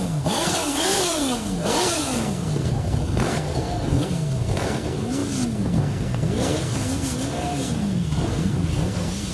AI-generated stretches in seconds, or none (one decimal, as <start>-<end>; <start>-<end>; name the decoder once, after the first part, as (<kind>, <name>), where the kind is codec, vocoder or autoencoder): 0.0-9.3 (codec, SNAC)